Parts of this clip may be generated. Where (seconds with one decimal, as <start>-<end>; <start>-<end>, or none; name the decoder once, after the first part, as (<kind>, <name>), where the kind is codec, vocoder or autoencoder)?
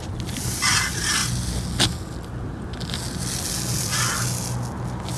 none